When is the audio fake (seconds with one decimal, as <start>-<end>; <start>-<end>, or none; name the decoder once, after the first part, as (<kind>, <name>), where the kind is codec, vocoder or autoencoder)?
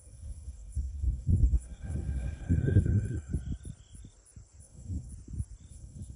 0.0-3.3 (codec, SNAC); 4.6-5.1; 5.7-6.2